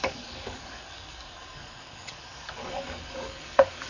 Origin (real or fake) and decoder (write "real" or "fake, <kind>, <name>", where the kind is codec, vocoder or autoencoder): fake, codec, DAC